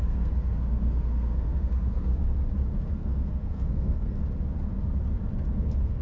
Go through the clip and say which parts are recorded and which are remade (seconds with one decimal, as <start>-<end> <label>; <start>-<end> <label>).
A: 0.0-2.2 remade; 2.2-2.9 recorded; 2.9-4.2 remade; 4.2-5.6 recorded; 5.6-6.0 remade